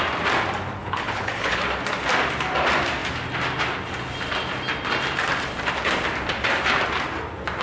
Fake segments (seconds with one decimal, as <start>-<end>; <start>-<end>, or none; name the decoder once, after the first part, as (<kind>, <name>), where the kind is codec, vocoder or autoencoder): 0.8-1.6 (codec, HILCodec)